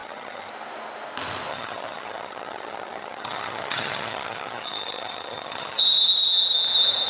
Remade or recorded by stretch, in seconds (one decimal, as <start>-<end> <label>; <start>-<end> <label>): 0.0-0.5 remade; 0.5-1.5 recorded; 1.5-5.8 remade; 5.8-7.1 recorded